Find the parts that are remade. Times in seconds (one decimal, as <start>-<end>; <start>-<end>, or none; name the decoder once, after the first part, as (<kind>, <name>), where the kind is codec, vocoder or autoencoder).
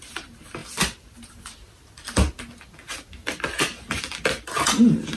none